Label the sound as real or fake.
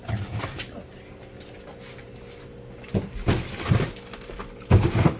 real